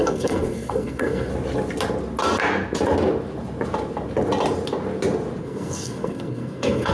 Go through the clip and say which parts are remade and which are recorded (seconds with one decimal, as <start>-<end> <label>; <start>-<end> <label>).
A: 0.0-1.3 remade; 1.3-5.4 recorded; 5.4-6.9 remade